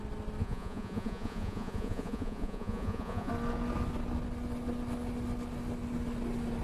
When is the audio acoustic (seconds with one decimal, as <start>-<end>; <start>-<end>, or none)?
0.0-0.4; 3.3-6.6

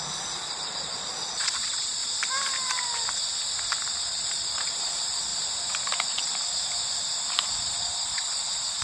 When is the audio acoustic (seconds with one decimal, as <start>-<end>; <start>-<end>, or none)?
2.0-4.0; 5.3-7.6

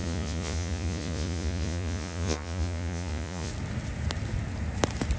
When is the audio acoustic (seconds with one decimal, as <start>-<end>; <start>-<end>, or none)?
3.5-5.2

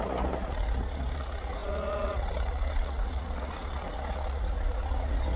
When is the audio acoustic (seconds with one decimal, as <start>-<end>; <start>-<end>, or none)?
none

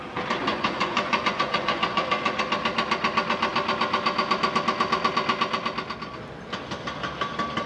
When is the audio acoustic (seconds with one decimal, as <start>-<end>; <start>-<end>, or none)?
0.0-0.5; 2.4-7.7

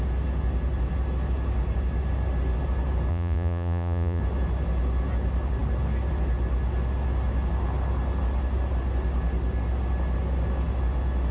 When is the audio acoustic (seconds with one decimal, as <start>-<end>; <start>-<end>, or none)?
0.0-3.1; 4.2-11.3

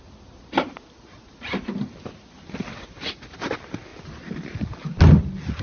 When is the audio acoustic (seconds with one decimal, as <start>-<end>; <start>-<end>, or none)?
0.0-5.6

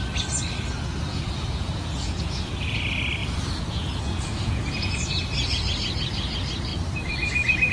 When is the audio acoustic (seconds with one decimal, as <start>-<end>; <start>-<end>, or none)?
0.0-1.1; 2.8-3.2; 5.0-7.7